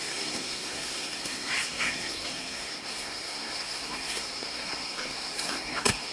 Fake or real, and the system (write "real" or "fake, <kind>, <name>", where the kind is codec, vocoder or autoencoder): fake, codec, SNAC